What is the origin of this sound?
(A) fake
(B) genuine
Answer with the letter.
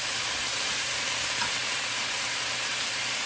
A